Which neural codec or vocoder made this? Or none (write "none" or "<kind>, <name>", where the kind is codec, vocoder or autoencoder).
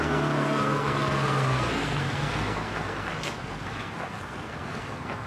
codec, SNAC